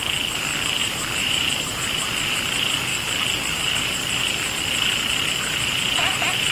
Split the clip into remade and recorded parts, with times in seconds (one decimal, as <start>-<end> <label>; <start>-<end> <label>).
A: 0.0-0.8 recorded; 0.8-1.7 remade; 1.7-6.5 recorded